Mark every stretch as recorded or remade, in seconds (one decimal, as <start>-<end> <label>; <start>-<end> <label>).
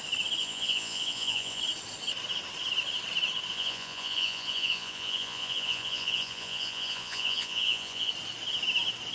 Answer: 0.0-0.4 recorded; 0.4-1.6 remade; 1.6-3.5 recorded; 3.5-8.1 remade; 8.1-9.1 recorded